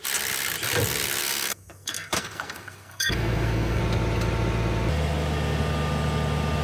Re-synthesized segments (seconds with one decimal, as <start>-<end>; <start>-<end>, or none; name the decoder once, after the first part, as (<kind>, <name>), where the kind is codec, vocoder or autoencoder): 1.2-3.8 (codec, SNAC)